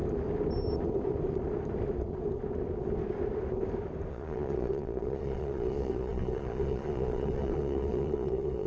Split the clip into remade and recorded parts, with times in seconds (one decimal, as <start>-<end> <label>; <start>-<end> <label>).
0.0-4.1 recorded; 4.1-8.7 remade